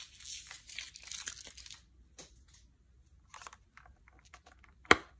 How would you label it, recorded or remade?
recorded